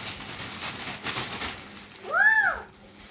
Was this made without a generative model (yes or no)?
yes